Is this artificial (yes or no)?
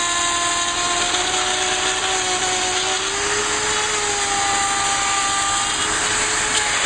no